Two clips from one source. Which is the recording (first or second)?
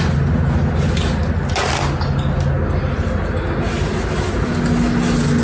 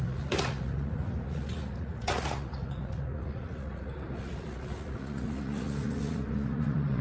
first